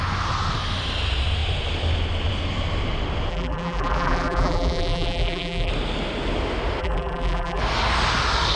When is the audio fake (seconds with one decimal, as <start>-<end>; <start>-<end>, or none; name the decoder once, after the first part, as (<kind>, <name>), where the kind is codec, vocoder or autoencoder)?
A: 3.3-5.7 (vocoder, BigVGAN v2); 6.8-7.6